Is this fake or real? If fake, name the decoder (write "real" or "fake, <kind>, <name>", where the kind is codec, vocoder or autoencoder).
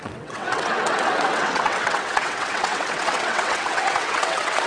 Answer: fake, vocoder, WaveNeXt